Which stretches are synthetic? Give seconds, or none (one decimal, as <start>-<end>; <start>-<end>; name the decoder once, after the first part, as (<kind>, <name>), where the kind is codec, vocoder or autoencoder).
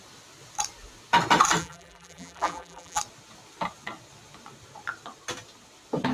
1.6-3.0 (vocoder, BigVGAN v2)